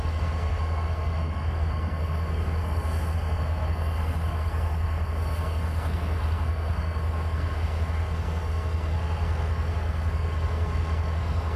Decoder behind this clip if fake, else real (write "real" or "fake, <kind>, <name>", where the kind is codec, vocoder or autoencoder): fake, codec, SNAC